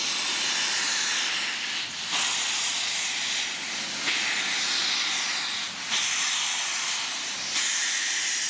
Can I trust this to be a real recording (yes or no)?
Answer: yes